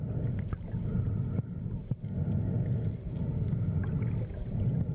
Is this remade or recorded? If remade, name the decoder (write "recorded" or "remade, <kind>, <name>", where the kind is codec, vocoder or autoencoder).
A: recorded